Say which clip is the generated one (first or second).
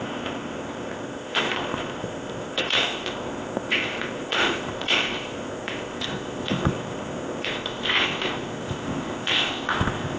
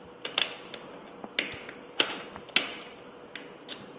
first